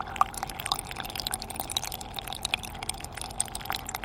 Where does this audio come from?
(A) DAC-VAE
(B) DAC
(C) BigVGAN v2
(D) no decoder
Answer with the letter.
D